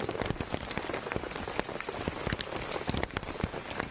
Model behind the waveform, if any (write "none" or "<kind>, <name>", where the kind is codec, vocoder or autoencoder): none